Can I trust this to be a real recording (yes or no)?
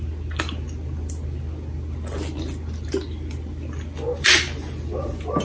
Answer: yes